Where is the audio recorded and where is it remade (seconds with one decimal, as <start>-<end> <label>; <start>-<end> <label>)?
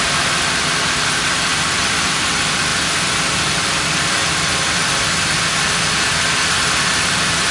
0.0-1.5 recorded; 1.5-2.3 remade; 2.3-2.7 recorded; 2.7-5.4 remade; 5.4-7.5 recorded